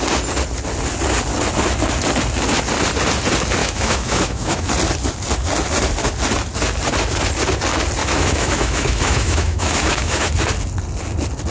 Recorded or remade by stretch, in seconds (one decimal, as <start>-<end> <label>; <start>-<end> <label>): 0.0-3.6 recorded; 3.6-4.7 remade; 4.7-8.0 recorded; 8.0-10.3 remade; 10.3-11.5 recorded